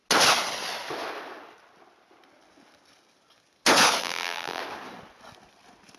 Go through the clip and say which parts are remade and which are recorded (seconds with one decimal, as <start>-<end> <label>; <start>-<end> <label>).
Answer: 0.0-4.0 recorded; 4.0-4.6 remade; 4.6-6.0 recorded